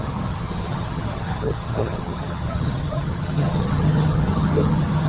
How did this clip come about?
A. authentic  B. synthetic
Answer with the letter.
B